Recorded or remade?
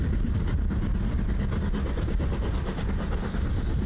recorded